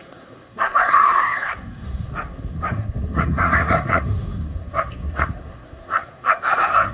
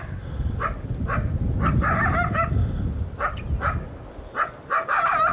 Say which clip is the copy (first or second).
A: first